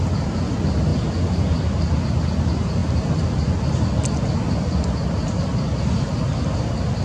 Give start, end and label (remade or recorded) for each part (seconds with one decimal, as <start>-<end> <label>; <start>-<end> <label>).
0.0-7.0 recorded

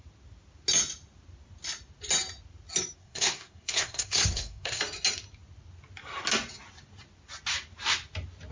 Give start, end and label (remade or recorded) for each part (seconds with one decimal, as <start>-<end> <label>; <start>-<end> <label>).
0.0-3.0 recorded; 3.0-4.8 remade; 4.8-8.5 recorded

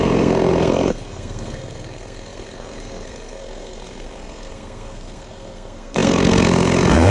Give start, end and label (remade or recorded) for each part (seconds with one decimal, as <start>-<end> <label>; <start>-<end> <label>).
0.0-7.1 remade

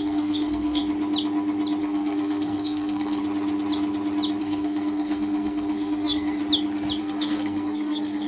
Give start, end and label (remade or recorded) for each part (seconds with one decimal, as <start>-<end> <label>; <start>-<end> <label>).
0.0-0.8 remade; 0.8-1.8 recorded; 1.8-3.2 remade; 3.2-4.4 recorded; 4.4-6.4 remade; 6.4-7.0 recorded; 7.0-8.3 remade

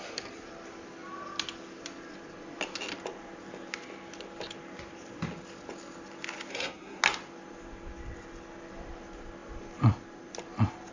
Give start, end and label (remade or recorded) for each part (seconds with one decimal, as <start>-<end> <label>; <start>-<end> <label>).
0.0-6.5 recorded; 6.5-7.0 remade; 7.0-10.9 recorded

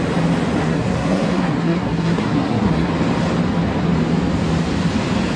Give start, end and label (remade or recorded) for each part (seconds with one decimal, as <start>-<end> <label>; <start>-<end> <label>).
0.0-0.6 recorded; 0.6-2.9 remade; 2.9-5.4 recorded

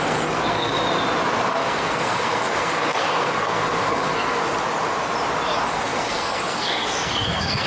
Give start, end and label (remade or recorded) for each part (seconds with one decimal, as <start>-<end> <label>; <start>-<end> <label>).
0.0-0.7 remade; 0.7-1.5 recorded; 1.5-4.4 remade; 4.4-5.7 recorded; 5.7-7.7 remade

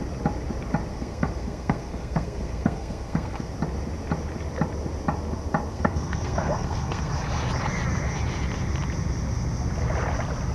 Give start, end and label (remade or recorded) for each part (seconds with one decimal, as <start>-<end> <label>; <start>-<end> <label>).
0.0-0.9 recorded; 0.9-3.5 remade; 3.5-5.7 recorded; 5.7-7.1 remade; 7.1-10.5 recorded